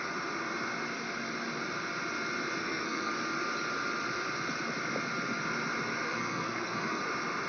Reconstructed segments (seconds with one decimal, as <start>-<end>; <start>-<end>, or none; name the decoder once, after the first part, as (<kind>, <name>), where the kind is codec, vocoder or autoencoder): 2.6-3.1 (codec, SNAC); 6.1-7.0